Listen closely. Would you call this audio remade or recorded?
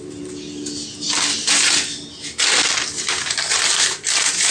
recorded